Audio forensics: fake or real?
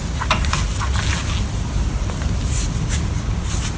real